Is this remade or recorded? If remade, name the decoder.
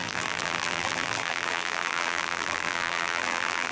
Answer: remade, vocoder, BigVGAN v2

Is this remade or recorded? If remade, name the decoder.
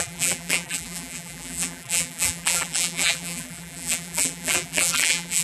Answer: remade, vocoder, BigVGAN v2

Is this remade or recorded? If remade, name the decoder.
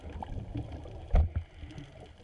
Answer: recorded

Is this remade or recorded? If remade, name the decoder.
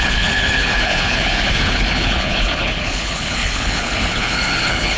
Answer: remade, codec, HILCodec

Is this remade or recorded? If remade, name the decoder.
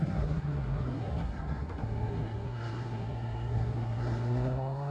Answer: remade, codec, SNAC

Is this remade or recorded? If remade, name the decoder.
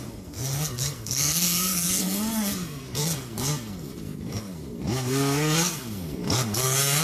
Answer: remade, codec, SNAC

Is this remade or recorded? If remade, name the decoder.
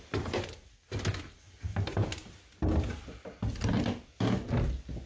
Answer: recorded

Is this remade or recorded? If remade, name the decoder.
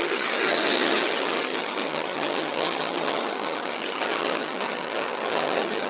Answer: remade, vocoder, HiFi-GAN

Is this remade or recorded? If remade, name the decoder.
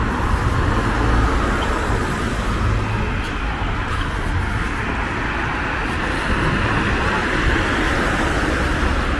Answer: recorded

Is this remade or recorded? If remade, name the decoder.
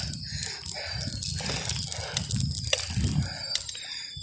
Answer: recorded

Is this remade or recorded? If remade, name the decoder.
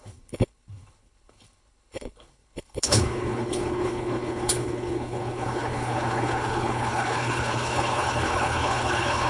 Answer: remade, codec, HILCodec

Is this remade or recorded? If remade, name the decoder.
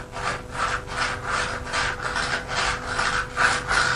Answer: recorded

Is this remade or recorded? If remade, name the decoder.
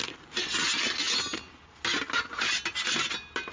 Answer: recorded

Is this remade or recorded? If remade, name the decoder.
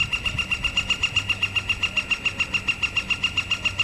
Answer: recorded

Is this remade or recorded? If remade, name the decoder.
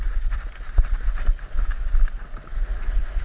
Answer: recorded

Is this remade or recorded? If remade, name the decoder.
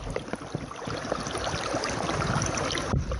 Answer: recorded